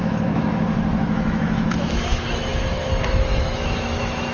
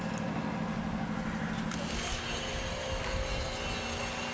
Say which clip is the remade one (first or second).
first